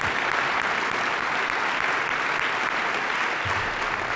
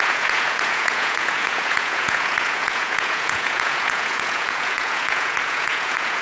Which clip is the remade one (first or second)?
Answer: second